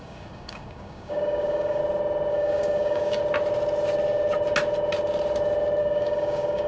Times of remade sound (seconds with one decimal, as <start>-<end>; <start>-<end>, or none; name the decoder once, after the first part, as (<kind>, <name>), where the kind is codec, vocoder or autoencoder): 0.0-1.8 (codec, DAC); 2.3-3.2; 5.8-6.7